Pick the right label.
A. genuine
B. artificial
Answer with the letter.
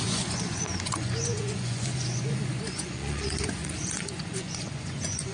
B